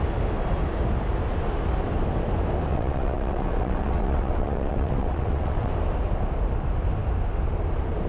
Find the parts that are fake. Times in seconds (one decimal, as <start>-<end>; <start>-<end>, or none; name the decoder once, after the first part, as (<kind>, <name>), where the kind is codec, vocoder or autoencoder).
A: 2.7-5.7 (vocoder, WaveNeXt)